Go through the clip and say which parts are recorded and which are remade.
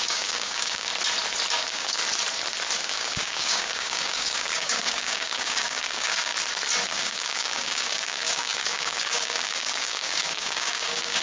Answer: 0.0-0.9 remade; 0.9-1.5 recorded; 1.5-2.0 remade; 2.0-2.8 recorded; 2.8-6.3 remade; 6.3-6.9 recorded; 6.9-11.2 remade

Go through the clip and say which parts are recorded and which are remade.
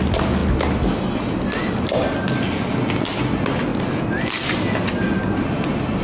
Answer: 0.0-6.0 recorded